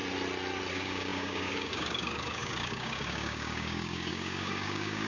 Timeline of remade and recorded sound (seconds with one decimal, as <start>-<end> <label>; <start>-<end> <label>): 0.0-0.7 recorded; 0.7-5.1 remade